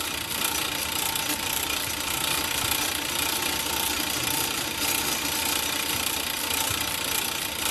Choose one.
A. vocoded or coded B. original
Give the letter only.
A